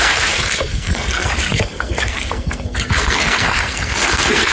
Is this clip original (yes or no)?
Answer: no